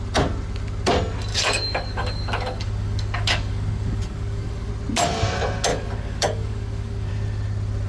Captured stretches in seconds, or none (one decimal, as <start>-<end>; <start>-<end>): 0.0-1.3; 4.7-5.7; 7.1-7.9